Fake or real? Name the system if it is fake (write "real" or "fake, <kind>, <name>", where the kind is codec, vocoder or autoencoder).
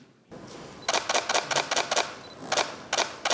real